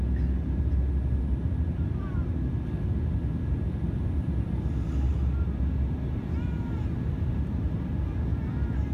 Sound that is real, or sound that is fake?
real